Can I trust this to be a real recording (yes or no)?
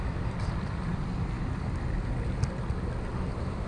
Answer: yes